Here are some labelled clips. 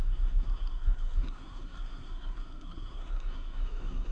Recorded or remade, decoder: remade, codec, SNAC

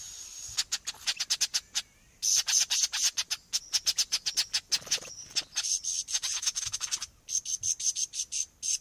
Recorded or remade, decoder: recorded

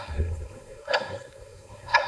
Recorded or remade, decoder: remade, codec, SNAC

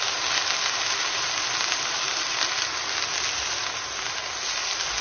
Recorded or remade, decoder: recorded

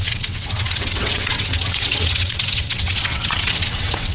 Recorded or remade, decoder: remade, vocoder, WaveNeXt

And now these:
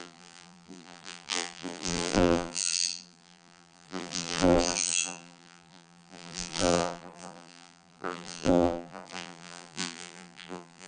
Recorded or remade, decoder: remade, vocoder, BigVGAN v2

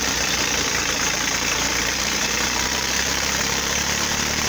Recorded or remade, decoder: remade, vocoder, BigVGAN v2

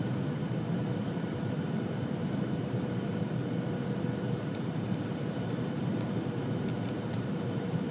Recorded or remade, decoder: remade, vocoder, BigVGAN v2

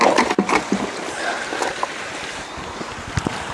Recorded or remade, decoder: recorded